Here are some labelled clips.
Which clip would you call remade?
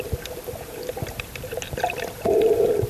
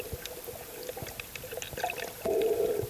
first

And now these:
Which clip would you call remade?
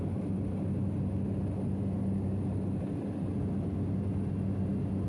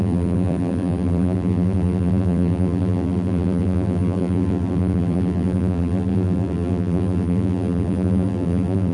second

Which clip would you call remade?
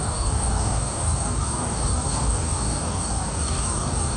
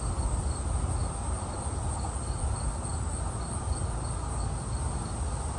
first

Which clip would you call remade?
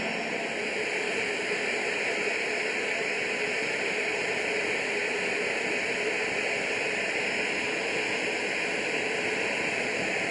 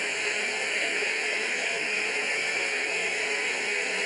second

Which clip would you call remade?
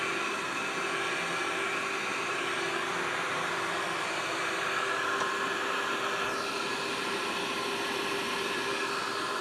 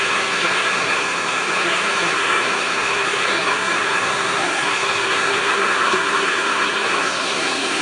second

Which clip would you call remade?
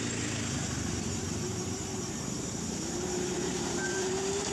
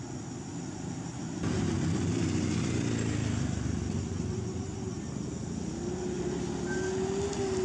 first